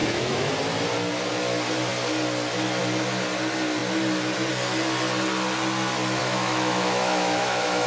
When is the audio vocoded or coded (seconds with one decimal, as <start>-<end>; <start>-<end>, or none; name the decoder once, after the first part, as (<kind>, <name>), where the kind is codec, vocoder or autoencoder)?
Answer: 0.0-0.5 (autoencoder, DAC-VAE); 6.2-7.9